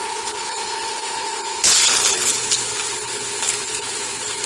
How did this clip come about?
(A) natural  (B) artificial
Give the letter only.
B